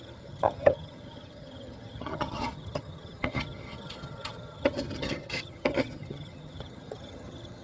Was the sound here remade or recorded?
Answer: remade